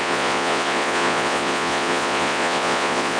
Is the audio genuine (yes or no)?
no